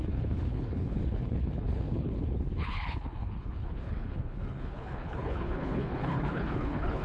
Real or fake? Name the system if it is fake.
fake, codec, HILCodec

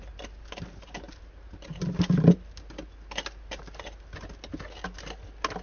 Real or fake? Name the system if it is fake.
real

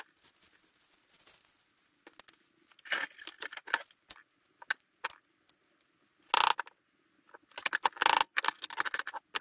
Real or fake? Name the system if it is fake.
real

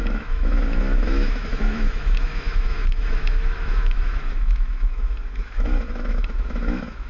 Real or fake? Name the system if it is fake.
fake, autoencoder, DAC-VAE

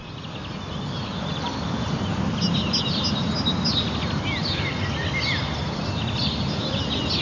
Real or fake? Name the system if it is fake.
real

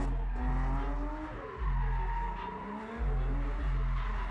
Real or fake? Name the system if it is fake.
real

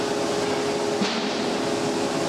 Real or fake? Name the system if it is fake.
real